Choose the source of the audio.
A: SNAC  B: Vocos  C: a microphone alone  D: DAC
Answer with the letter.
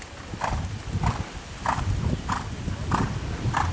C